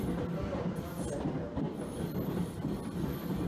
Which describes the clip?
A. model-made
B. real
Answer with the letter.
B